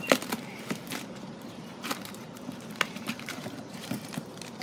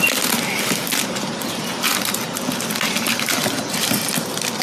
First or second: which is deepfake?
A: first